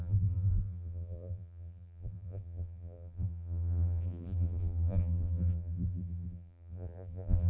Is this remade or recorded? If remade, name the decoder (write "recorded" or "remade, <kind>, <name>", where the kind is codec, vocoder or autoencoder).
remade, vocoder, BigVGAN v2